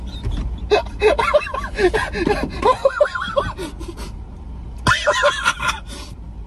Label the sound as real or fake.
real